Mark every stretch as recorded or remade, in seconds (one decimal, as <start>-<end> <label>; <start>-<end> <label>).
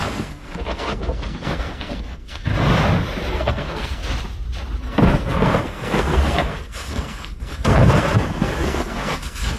0.0-2.5 remade; 2.5-3.3 recorded; 3.3-4.0 remade; 4.0-4.8 recorded; 4.8-9.6 remade